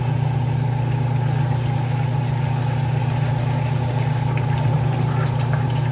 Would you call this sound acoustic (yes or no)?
yes